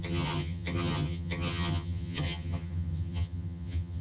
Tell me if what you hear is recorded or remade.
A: remade